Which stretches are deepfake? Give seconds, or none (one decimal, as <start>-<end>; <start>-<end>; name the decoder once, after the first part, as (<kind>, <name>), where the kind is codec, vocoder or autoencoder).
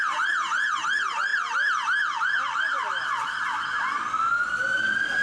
none